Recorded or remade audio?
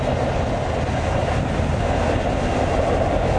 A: recorded